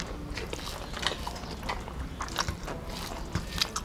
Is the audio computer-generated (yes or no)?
no